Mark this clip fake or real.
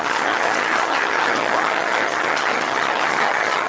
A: fake